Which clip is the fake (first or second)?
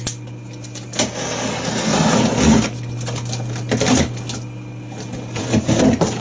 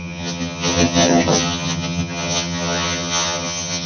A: second